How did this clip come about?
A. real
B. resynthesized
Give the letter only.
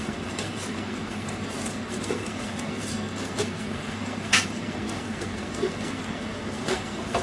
B